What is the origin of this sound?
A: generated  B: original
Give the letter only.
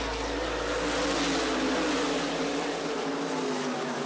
B